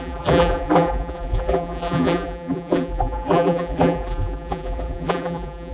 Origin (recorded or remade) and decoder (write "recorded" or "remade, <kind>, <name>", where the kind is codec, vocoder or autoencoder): remade, vocoder, BigVGAN v2